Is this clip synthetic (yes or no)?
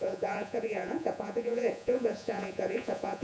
yes